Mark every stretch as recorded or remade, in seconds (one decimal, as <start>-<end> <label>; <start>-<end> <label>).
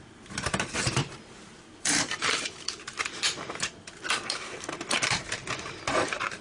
0.0-5.4 remade; 5.4-5.9 recorded; 5.9-6.4 remade